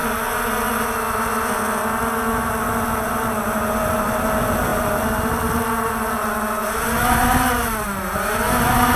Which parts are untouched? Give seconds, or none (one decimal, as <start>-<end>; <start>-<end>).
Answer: 0.0-9.0